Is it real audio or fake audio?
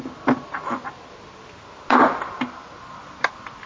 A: real